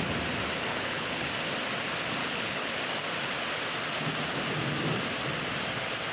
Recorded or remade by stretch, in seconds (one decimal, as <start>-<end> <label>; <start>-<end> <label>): 0.0-0.7 recorded; 0.7-1.3 remade; 1.3-2.2 recorded; 2.2-2.7 remade; 2.7-6.1 recorded